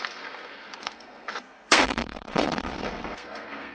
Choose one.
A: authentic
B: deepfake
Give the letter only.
B